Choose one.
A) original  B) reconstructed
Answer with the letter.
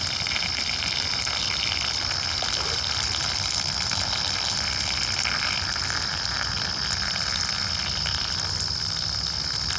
A